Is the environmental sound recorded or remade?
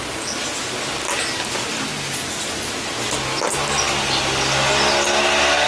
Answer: recorded